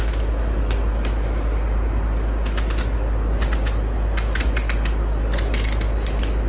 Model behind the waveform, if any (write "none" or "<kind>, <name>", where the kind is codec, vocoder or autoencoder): none